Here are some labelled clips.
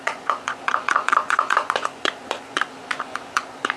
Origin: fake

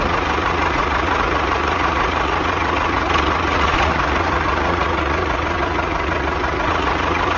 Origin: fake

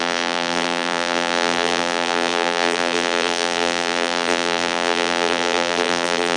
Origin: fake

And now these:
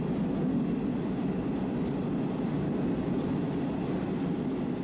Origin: real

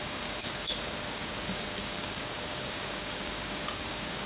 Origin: fake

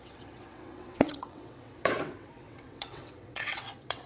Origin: fake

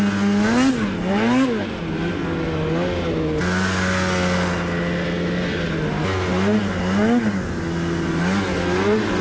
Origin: real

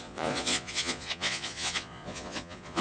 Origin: fake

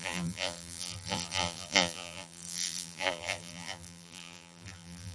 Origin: fake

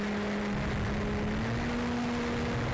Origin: real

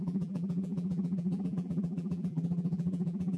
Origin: fake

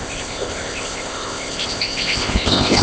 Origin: fake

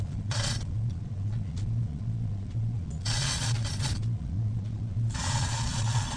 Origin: fake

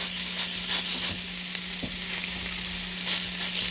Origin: real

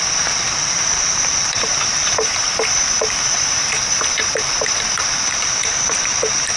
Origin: fake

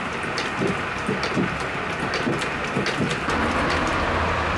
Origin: real